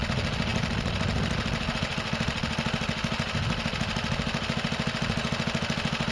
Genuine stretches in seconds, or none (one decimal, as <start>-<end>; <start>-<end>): 0.0-6.1